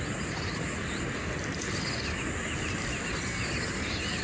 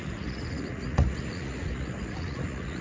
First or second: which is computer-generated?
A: second